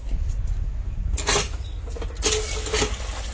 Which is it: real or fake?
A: real